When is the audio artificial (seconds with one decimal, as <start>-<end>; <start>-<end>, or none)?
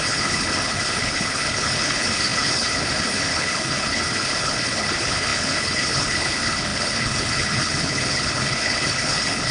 0.0-9.5